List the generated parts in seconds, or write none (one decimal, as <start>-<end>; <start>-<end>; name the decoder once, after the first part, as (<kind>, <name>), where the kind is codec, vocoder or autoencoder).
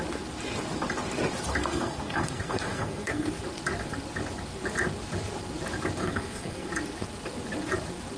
1.6-3.3 (codec, SNAC); 6.0-6.7